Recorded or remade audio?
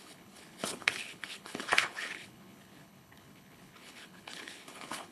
remade